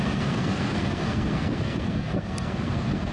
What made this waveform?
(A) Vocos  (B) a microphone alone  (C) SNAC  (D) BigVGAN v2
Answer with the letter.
C